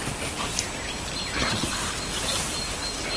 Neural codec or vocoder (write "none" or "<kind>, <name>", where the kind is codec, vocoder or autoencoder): none